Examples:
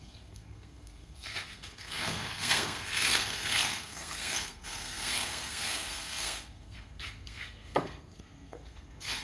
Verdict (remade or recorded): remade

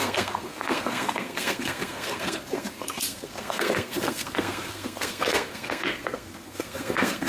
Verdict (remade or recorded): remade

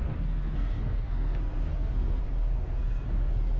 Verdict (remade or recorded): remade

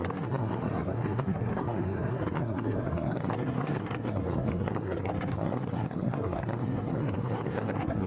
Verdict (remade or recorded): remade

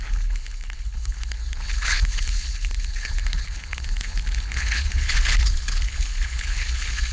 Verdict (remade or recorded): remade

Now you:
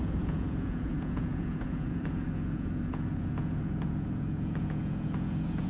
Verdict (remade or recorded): remade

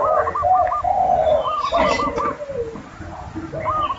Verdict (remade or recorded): recorded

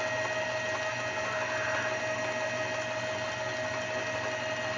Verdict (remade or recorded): recorded